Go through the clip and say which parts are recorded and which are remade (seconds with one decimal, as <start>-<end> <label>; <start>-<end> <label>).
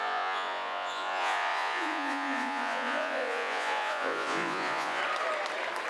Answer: 0.0-5.0 remade; 5.0-5.9 recorded